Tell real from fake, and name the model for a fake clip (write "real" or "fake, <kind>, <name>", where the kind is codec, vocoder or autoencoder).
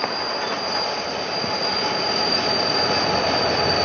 real